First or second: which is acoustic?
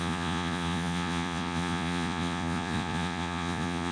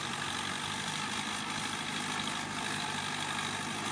second